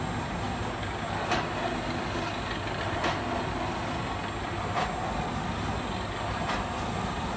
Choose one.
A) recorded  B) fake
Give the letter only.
A